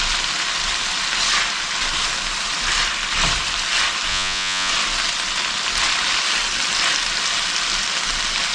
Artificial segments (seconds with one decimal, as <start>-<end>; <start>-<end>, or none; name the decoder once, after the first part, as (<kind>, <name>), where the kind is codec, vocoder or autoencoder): 4.1-4.7 (vocoder, Vocos)

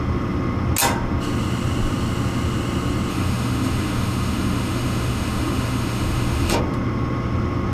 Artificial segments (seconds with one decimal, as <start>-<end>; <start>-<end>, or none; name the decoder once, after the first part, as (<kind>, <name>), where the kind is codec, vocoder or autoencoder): 3.1-6.6 (autoencoder, DAC-VAE)

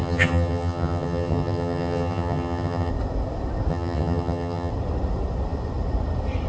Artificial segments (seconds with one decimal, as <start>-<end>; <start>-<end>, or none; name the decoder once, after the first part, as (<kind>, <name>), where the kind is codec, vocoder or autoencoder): 0.0-2.9 (vocoder, HiFi-GAN); 3.7-4.7

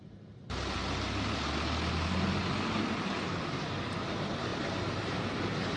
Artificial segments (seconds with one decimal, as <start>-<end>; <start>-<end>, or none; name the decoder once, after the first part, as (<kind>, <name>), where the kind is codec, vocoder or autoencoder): 0.0-0.8 (vocoder, BigVGAN v2); 2.4-5.8

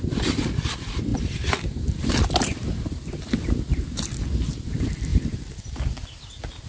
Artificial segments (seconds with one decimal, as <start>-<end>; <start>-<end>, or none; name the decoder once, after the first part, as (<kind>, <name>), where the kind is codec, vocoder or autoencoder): none

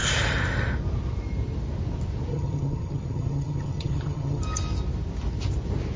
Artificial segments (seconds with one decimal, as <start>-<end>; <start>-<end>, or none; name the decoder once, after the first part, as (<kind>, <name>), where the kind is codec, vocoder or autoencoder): 2.3-4.4 (vocoder, HiFi-GAN)